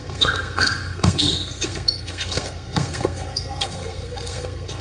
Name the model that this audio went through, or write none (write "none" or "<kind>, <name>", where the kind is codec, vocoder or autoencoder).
codec, SNAC